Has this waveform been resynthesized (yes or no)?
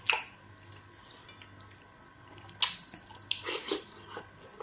no